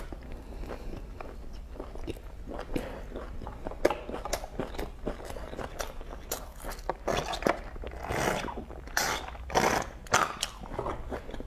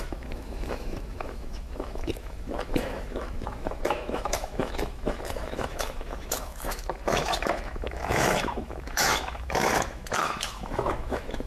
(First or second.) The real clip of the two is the first